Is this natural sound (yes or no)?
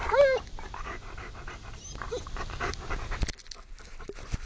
yes